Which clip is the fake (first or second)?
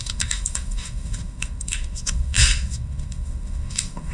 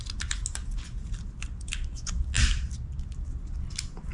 first